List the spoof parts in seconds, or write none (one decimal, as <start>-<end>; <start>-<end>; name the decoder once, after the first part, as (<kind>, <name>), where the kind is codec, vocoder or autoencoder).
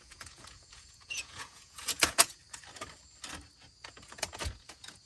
0.0-2.4 (vocoder, Vocos); 3.8-5.1